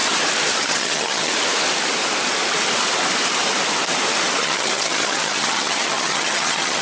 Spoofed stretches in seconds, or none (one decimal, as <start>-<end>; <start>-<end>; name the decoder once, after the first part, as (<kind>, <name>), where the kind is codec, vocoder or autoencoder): 0.6-1.3 (vocoder, HiFi-GAN); 4.4-6.8